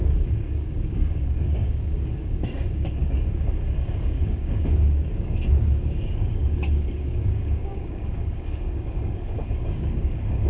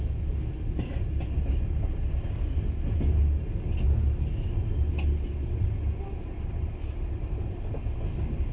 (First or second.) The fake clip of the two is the first